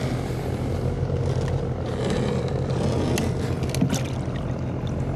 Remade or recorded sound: recorded